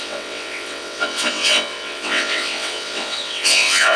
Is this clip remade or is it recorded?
remade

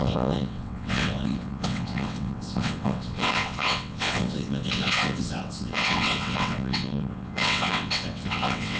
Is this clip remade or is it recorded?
remade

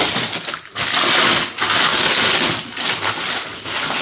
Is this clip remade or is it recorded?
recorded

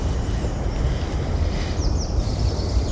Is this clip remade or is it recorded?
recorded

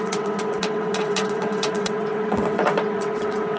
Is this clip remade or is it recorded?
remade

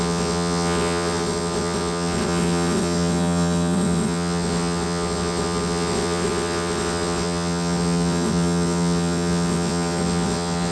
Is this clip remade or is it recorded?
remade